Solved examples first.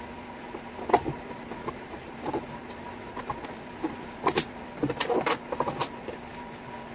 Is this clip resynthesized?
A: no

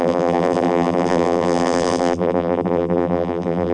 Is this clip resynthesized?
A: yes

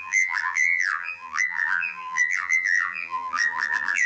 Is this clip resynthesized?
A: yes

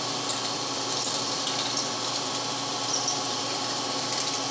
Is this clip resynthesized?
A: yes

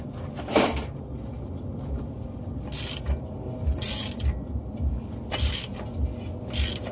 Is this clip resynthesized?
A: no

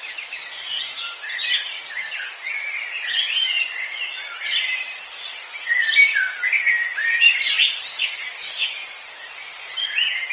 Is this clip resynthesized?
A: yes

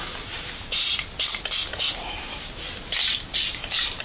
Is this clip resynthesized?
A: no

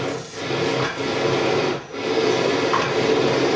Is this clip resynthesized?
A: no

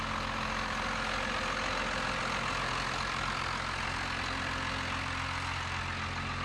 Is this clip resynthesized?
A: no